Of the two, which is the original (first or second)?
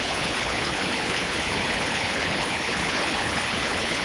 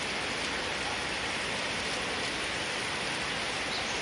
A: second